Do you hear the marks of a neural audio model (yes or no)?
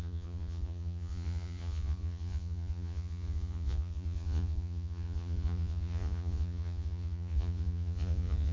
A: yes